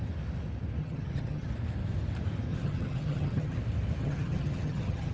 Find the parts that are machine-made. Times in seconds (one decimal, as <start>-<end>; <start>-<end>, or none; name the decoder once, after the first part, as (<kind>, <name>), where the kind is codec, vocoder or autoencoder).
0.8-1.5 (vocoder, HiFi-GAN); 2.5-3.6; 4.0-5.1